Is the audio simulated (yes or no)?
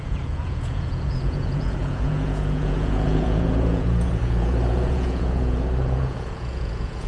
yes